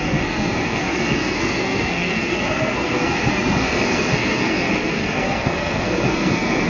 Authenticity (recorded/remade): remade